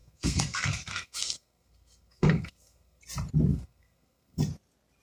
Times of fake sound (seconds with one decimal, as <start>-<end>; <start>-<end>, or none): 0.0-3.0; 3.5-4.4